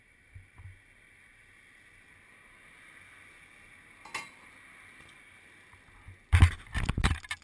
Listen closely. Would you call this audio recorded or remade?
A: recorded